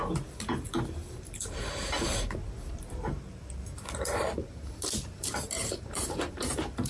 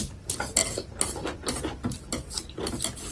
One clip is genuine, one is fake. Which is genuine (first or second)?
second